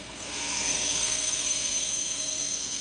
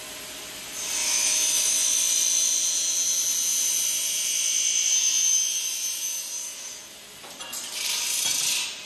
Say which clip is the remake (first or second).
first